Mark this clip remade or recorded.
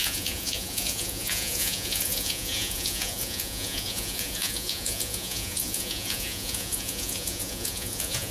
remade